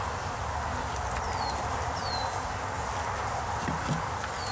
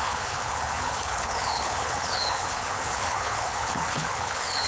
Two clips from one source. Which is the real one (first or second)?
first